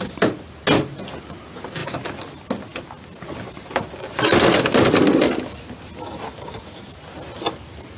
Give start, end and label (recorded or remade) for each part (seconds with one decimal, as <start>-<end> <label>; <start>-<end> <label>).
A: 0.0-8.0 recorded